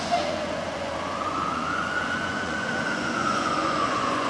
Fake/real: fake